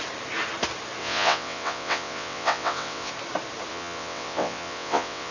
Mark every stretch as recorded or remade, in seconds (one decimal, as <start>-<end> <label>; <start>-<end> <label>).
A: 0.0-1.0 recorded; 1.0-3.1 remade; 3.1-3.7 recorded; 3.7-5.3 remade